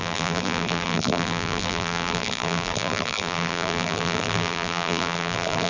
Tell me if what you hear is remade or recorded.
remade